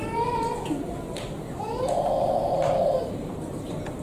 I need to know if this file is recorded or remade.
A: remade